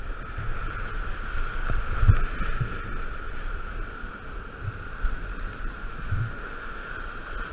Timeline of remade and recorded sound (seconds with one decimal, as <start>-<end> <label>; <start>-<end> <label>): 0.0-5.8 recorded; 5.8-6.9 remade; 6.9-7.5 recorded